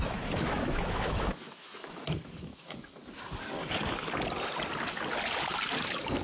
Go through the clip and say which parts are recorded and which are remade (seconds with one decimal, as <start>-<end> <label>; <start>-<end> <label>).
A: 0.0-3.0 remade; 3.0-6.2 recorded